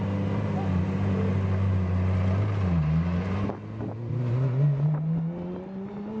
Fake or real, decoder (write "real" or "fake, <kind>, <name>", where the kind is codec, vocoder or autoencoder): real